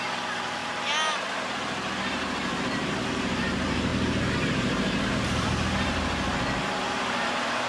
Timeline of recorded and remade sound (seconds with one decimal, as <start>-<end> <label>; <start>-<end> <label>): 0.0-3.9 remade; 3.9-5.0 recorded; 5.0-6.3 remade; 6.3-6.8 recorded; 6.8-7.7 remade

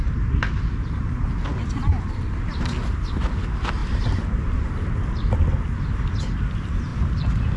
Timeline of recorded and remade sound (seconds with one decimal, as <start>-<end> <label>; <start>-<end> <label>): 0.0-3.8 recorded; 3.8-4.9 remade; 4.9-6.9 recorded; 6.9-7.6 remade

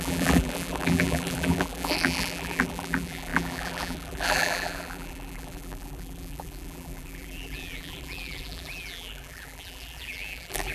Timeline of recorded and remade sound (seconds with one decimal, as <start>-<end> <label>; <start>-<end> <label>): 0.0-10.7 remade